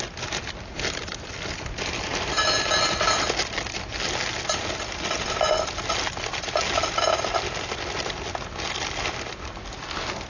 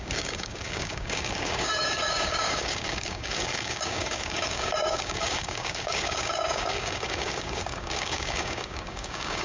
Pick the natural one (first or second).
first